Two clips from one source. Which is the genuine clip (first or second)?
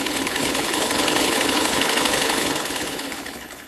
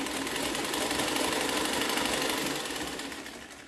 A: second